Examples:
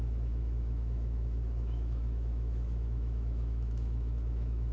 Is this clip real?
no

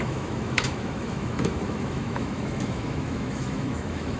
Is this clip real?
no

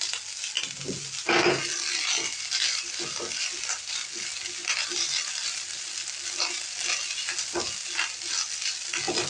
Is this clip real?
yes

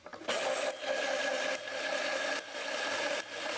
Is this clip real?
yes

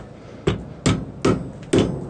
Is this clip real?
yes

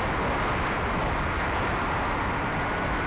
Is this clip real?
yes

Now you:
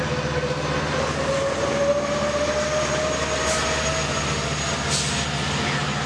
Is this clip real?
yes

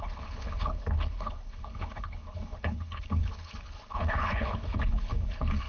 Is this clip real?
no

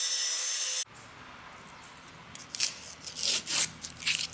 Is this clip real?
yes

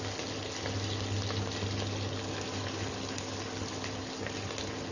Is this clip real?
yes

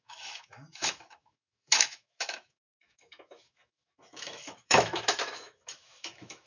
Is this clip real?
no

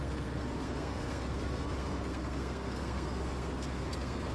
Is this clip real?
no